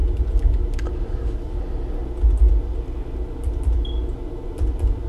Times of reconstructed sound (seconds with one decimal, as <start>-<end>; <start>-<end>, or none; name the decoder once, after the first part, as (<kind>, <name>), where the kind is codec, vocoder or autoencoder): none